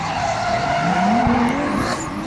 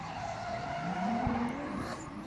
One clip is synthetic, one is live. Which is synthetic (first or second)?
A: second